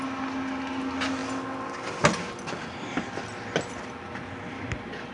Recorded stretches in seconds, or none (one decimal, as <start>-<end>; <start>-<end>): 0.0-5.1